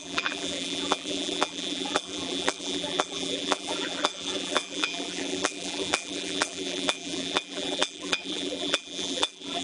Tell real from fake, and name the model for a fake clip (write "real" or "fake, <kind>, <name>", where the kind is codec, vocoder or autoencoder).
fake, vocoder, BigVGAN v2